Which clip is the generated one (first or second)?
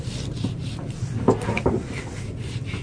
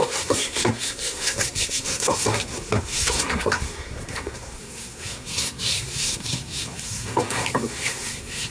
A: second